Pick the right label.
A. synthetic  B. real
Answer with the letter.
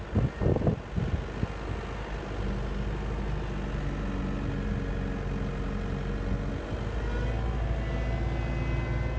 B